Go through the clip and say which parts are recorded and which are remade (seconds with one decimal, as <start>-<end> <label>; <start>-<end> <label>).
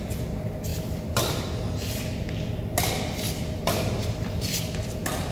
0.0-0.7 remade; 0.7-3.0 recorded; 3.0-5.3 remade